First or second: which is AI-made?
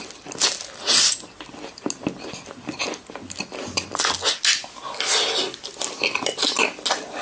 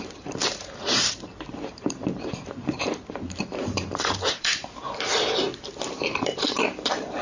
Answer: second